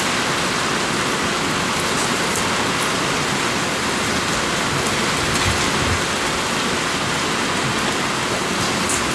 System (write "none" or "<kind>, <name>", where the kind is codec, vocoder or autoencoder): none